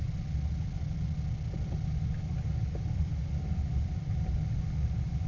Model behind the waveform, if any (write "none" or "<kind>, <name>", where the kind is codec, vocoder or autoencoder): none